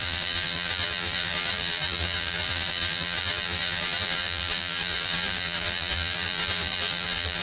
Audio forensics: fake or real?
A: fake